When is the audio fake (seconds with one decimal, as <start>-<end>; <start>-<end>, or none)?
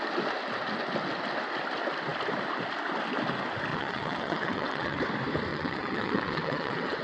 3.7-5.0; 5.5-7.0